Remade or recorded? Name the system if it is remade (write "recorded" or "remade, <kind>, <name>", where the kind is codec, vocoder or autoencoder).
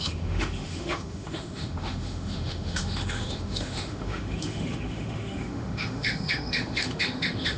remade, autoencoder, DAC-VAE